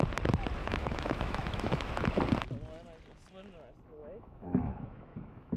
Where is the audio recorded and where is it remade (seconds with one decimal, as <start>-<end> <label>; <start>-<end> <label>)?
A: 0.0-0.6 recorded; 0.6-1.9 remade; 1.9-4.0 recorded; 4.0-5.6 remade